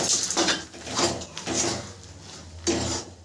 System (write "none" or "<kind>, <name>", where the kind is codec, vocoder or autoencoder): none